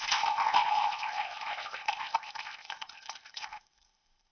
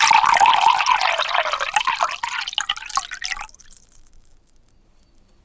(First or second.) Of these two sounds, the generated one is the first